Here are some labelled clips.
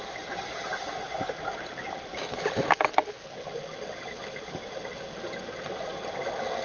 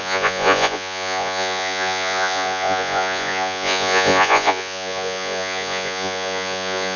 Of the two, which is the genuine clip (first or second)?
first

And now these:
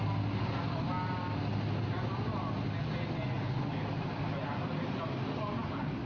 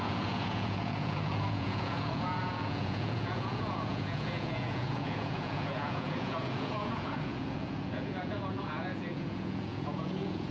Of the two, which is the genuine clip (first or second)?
first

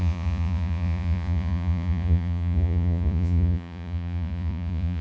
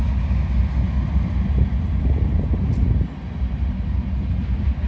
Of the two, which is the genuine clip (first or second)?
second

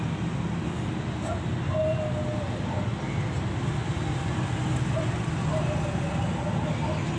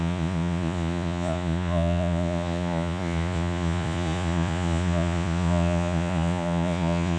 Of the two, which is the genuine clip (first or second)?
first